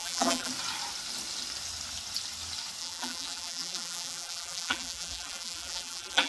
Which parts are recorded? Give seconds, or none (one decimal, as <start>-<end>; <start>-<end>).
0.5-2.8